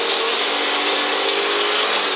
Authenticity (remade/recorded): recorded